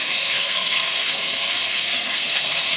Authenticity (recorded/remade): remade